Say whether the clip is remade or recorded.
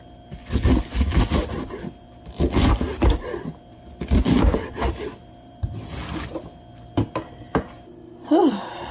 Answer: recorded